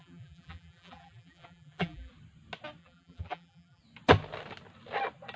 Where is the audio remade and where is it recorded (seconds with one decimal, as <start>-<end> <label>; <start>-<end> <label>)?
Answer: 0.0-2.1 remade; 2.1-2.8 recorded; 2.8-3.8 remade; 3.8-5.4 recorded

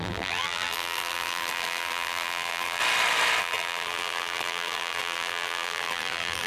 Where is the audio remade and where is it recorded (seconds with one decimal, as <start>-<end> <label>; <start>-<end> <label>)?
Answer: 0.0-2.8 remade; 2.8-3.4 recorded; 3.4-6.5 remade